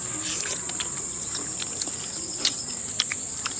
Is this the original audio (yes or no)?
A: yes